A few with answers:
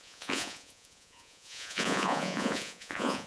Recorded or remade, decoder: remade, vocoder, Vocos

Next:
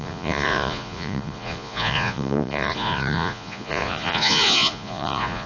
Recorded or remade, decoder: remade, vocoder, Vocos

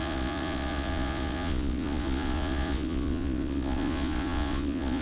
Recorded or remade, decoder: remade, vocoder, Vocos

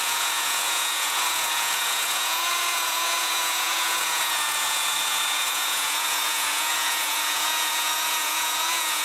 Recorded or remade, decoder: remade, vocoder, Vocos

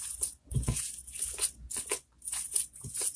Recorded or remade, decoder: remade, vocoder, Vocos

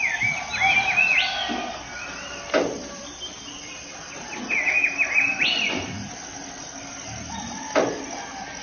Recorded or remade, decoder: recorded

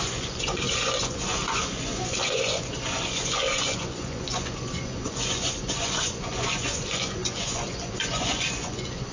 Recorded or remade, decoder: remade, vocoder, Vocos